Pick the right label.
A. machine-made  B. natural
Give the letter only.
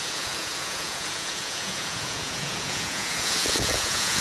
A